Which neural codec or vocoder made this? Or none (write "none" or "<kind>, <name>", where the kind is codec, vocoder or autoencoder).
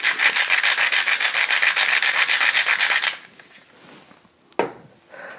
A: none